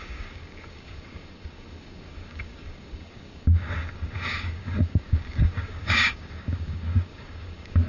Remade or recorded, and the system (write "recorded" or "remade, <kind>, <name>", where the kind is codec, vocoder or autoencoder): remade, codec, DAC